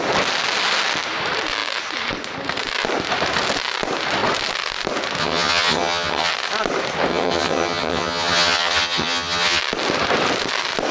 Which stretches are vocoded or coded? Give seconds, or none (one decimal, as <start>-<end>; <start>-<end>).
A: 5.2-6.3; 7.1-9.6